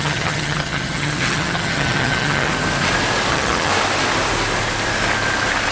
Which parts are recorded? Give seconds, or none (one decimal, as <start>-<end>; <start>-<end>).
2.5-3.3; 3.7-5.7